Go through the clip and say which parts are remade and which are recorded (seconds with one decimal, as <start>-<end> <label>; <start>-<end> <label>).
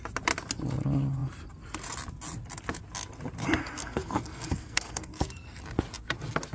0.0-3.6 recorded; 3.6-5.6 remade; 5.6-6.5 recorded